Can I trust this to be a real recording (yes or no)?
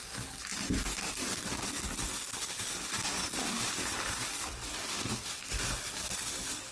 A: yes